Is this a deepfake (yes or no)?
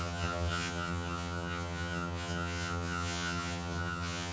yes